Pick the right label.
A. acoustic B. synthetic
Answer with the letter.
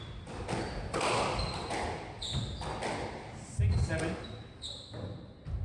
A